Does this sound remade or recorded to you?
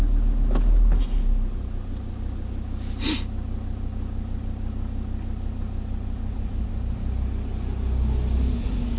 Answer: recorded